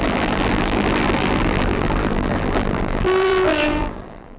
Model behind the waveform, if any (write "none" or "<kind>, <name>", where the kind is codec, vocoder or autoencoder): vocoder, BigVGAN v2